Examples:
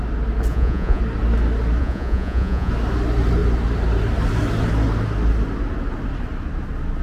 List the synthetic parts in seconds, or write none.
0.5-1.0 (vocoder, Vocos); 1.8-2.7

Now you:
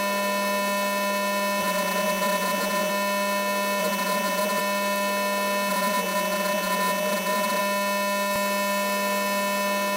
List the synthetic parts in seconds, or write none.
1.6-2.9 (vocoder, Vocos); 3.8-4.6; 5.7-7.6